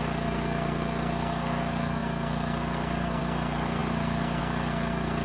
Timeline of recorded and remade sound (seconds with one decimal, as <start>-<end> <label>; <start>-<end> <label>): 0.0-5.2 remade